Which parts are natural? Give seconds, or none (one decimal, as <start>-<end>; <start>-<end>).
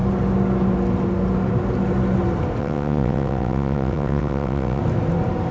0.0-2.6; 4.8-5.5